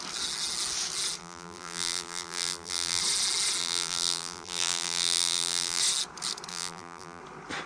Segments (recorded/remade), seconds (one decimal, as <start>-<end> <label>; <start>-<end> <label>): 0.0-1.2 recorded; 1.2-3.0 remade; 3.0-3.6 recorded; 3.6-5.8 remade; 5.8-6.5 recorded; 6.5-7.2 remade; 7.2-7.7 recorded